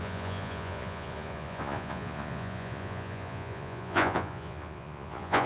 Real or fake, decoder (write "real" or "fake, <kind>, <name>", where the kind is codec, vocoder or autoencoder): fake, vocoder, Vocos